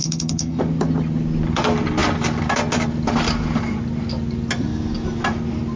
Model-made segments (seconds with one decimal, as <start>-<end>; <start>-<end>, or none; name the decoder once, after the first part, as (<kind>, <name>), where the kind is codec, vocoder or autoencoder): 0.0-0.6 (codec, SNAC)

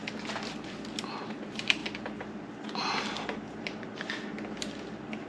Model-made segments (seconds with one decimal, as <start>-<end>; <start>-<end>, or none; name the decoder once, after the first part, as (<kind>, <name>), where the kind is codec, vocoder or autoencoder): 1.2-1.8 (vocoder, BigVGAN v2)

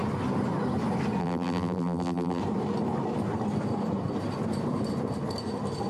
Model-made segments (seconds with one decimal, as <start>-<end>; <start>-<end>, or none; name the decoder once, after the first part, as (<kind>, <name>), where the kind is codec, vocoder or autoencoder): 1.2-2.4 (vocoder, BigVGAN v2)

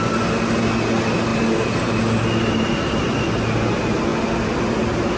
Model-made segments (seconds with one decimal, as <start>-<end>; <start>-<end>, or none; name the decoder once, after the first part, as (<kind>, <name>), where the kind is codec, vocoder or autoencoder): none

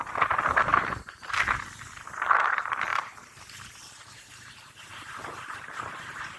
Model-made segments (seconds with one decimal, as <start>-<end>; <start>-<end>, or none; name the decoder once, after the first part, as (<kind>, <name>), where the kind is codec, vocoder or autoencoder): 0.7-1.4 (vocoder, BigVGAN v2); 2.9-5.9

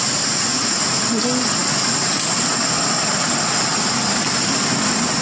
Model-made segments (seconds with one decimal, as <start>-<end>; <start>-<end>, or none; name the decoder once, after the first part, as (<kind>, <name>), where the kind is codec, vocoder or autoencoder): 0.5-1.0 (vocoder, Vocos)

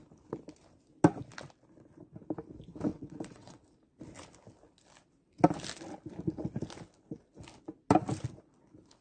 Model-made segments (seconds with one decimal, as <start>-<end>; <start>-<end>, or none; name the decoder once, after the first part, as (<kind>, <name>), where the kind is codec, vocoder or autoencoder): 2.9-3.6 (vocoder, WaveNeXt)

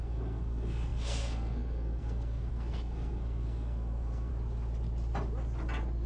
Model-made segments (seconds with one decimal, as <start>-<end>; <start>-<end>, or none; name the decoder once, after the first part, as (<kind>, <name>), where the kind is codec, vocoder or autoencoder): 0.0-4.3 (codec, SNAC)